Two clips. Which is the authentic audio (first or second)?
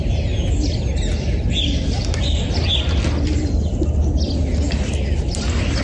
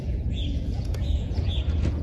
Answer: first